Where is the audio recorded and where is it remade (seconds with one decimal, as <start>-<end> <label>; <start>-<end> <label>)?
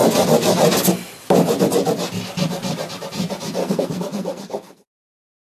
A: 0.0-3.6 recorded; 3.6-5.0 remade; 5.0-5.4 recorded